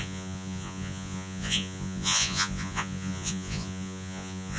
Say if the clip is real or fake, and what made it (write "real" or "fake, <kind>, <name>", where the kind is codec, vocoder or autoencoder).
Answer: fake, vocoder, Vocos